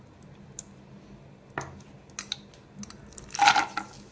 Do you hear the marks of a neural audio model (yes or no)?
no